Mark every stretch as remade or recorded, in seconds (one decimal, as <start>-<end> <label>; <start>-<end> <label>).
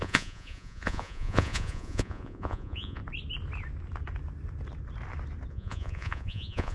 0.0-3.0 remade; 3.0-5.5 recorded; 5.5-6.7 remade